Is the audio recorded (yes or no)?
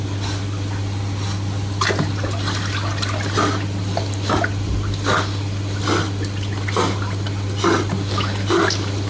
yes